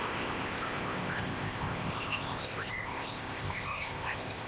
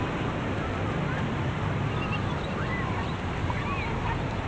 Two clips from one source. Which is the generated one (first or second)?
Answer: first